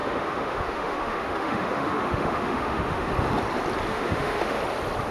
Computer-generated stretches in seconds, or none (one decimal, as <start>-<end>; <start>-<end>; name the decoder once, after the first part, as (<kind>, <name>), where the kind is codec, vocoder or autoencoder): 0.0-3.1 (autoencoder, DAC-VAE); 3.9-4.6